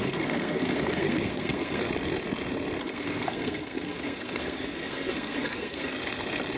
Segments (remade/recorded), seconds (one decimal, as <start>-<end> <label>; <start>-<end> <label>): 0.0-1.8 remade; 1.8-2.8 recorded; 2.8-5.9 remade; 5.9-6.6 recorded